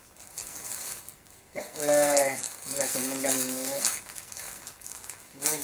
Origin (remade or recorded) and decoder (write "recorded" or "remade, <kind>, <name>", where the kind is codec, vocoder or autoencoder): remade, codec, SNAC